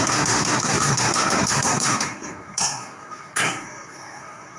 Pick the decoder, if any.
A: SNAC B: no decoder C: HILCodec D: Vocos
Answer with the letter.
A